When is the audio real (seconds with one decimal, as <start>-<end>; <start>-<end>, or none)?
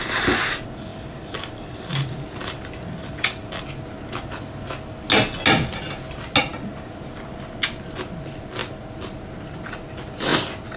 0.0-0.9; 3.6-6.5; 7.5-10.8